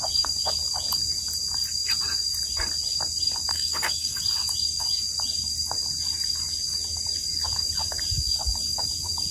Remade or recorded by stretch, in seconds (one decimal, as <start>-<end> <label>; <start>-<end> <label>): 0.0-3.5 recorded; 3.5-4.2 remade; 4.2-9.3 recorded